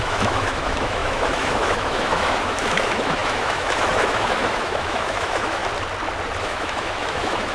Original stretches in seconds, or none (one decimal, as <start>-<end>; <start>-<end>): 5.6-6.4